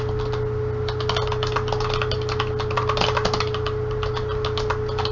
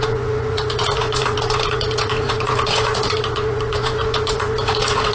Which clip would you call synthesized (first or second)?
second